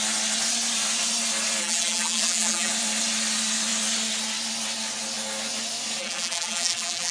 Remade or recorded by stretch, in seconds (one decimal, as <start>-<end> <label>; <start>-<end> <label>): 0.0-1.6 recorded; 1.6-2.7 remade; 2.7-6.0 recorded; 6.0-7.1 remade